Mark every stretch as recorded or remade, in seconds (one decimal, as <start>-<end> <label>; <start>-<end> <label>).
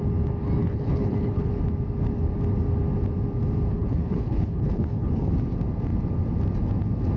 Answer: 0.0-0.6 recorded; 0.6-1.6 remade; 1.6-3.7 recorded; 3.7-5.3 remade; 5.3-7.2 recorded